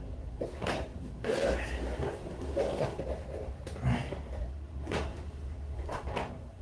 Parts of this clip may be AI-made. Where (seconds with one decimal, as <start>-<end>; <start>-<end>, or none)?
0.0-3.0; 4.4-6.6